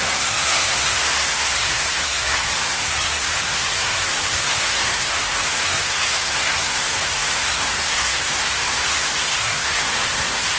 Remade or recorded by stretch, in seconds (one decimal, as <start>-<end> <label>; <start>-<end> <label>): 0.0-10.6 remade